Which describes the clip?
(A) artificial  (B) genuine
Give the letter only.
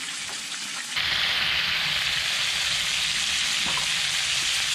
B